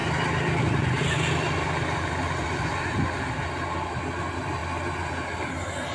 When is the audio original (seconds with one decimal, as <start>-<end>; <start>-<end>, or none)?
0.0-5.9